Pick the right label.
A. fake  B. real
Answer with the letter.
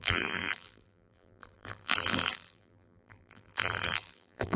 A